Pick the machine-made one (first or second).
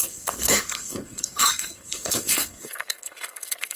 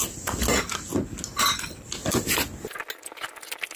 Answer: first